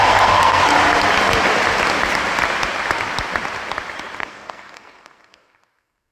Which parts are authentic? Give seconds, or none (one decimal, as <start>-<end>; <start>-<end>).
0.6-4.2